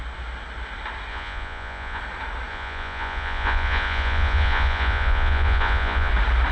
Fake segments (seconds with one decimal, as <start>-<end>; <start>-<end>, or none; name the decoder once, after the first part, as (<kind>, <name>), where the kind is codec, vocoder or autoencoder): 1.1-2.0 (vocoder, Vocos); 2.5-6.1